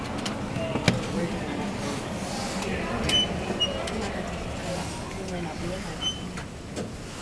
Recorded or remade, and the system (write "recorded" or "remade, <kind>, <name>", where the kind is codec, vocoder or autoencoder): recorded